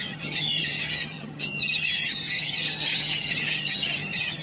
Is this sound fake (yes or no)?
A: yes